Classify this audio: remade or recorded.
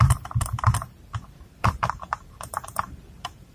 remade